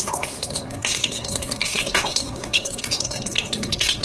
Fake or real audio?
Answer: fake